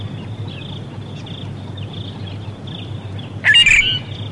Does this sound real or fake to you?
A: real